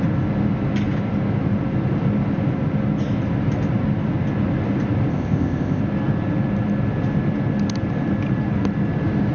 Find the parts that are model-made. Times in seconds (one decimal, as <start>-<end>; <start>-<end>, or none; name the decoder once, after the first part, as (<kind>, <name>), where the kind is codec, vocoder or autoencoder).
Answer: 5.1-5.8 (codec, ZipCodec)